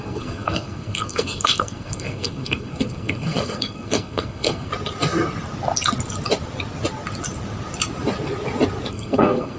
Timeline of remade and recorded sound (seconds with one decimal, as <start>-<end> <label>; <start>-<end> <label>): 0.0-4.7 remade; 4.7-8.9 recorded; 8.9-9.6 remade

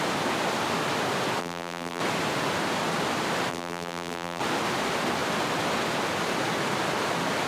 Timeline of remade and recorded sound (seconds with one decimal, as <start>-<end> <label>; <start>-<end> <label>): 0.0-1.4 recorded; 1.4-2.0 remade; 2.0-3.5 recorded; 3.5-4.4 remade; 4.4-7.5 recorded